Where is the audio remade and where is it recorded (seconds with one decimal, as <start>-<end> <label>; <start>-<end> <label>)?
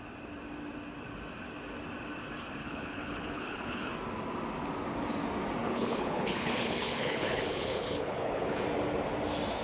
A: 0.0-2.6 recorded; 2.6-3.9 remade; 3.9-5.6 recorded; 5.6-8.6 remade; 8.6-9.6 recorded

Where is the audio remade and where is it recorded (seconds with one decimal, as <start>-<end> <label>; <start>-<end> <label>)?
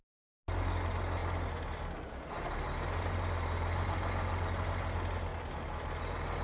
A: 0.0-6.4 recorded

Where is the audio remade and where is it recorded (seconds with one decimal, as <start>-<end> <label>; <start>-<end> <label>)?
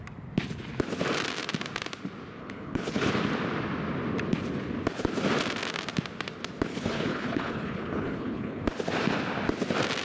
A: 0.0-2.4 recorded; 2.4-3.1 remade; 3.1-6.7 recorded; 6.7-8.6 remade; 8.6-10.0 recorded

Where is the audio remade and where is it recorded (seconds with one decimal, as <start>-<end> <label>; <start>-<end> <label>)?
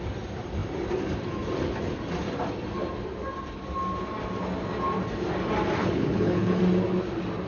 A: 0.0-5.8 recorded; 5.8-6.6 remade; 6.6-7.5 recorded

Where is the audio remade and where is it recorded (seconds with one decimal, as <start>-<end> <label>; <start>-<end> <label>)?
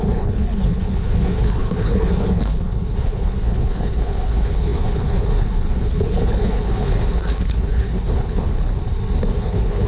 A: 0.0-8.7 remade; 8.7-9.4 recorded; 9.4-9.9 remade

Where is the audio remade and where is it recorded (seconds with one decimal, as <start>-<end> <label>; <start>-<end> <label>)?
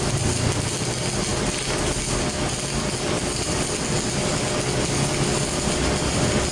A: 0.0-6.5 recorded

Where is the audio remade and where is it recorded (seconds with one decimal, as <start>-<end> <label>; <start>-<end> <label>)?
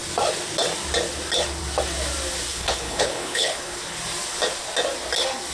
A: 0.0-2.5 recorded; 2.5-3.8 remade; 3.8-5.5 recorded